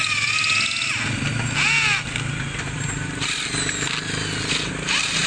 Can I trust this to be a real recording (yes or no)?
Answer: yes